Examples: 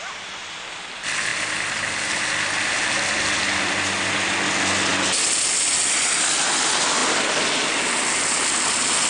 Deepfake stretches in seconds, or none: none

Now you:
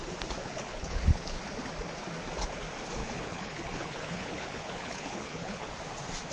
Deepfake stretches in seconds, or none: 0.4-1.4; 3.0-5.7

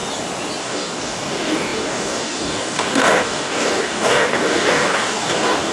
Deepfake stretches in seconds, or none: 0.6-5.7

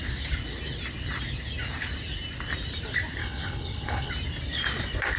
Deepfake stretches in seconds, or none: 3.2-4.1

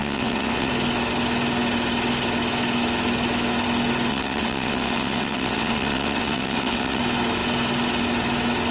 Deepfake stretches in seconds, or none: 0.0-0.7; 4.1-7.0

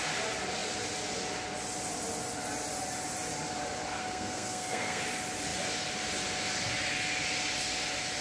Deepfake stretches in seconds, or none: 4.0-5.0

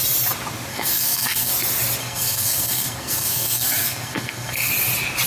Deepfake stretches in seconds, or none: 0.7-1.5; 2.0-4.7